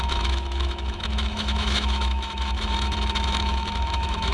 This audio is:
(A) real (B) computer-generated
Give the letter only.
B